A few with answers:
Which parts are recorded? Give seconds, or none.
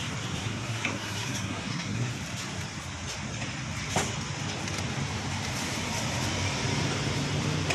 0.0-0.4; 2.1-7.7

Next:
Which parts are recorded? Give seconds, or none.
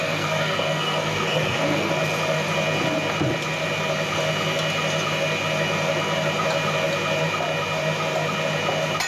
1.9-9.1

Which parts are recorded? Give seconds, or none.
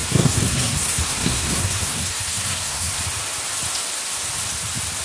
3.0-5.0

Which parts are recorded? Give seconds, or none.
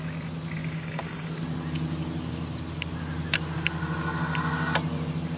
0.0-0.6; 1.3-5.4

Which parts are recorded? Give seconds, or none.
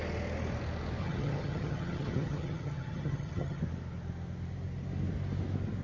0.0-1.0; 3.6-5.8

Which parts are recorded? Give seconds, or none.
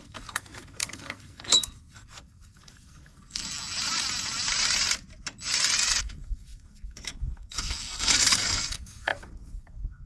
3.4-6.0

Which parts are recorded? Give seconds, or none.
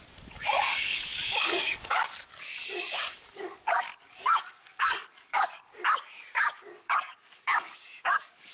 none